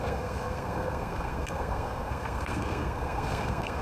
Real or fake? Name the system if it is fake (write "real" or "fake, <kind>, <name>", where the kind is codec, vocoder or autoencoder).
fake, codec, SNAC